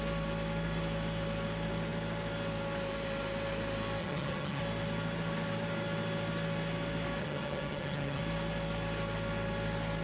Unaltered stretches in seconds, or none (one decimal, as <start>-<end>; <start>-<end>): 0.0-4.0; 4.6-7.2; 8.2-10.0